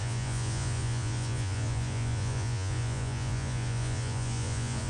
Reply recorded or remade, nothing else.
remade